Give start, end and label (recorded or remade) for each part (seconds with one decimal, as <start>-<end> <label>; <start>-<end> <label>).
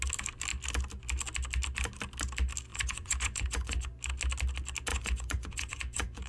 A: 0.0-2.7 recorded; 2.7-3.9 remade; 3.9-4.9 recorded; 4.9-6.3 remade